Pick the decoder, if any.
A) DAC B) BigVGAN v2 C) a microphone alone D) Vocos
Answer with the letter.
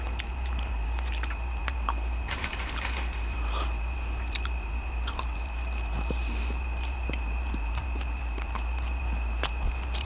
B